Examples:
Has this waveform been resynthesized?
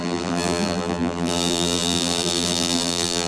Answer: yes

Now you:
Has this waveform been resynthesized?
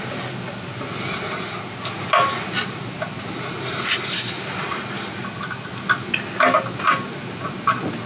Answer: no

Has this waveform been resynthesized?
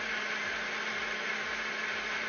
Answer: no